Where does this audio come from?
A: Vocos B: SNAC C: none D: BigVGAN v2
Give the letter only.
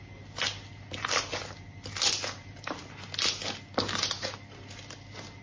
C